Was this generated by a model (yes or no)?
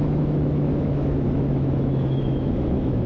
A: yes